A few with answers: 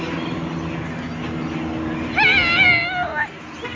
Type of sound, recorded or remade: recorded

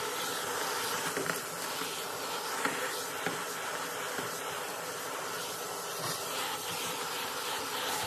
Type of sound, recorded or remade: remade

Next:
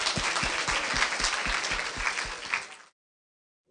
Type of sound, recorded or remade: recorded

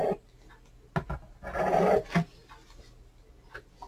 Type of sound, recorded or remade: recorded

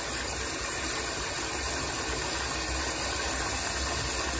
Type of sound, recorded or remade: recorded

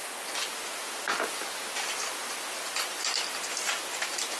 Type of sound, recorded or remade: recorded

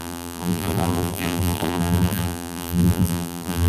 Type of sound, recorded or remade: remade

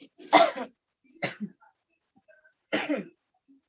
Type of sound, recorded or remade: remade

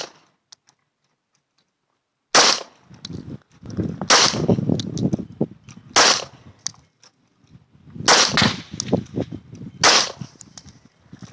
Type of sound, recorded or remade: recorded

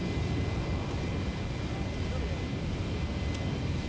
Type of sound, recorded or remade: recorded